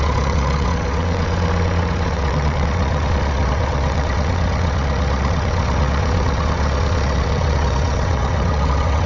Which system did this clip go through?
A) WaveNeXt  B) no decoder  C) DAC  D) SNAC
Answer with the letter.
A